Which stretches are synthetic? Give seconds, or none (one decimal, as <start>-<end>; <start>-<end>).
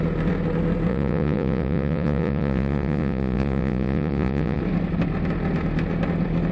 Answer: 0.9-4.6